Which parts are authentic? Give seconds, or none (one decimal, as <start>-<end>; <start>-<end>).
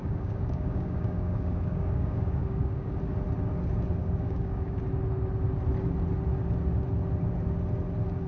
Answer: 2.9-4.0; 4.8-8.3